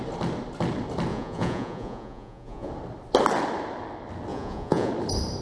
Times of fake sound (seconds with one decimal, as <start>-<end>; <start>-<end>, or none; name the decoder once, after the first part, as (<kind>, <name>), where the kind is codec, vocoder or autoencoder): 1.1-2.7 (vocoder, Vocos); 4.3-4.9